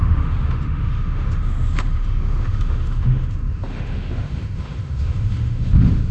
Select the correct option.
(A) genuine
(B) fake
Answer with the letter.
B